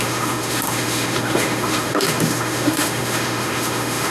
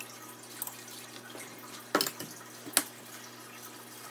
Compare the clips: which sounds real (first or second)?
second